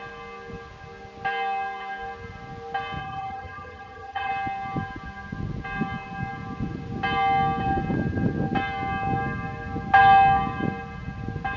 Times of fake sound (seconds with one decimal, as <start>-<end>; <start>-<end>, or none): 3.0-4.3